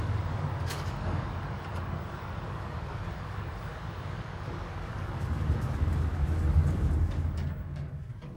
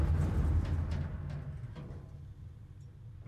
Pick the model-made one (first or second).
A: first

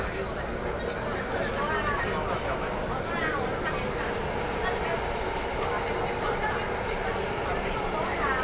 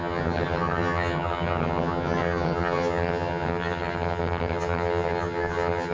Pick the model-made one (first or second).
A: second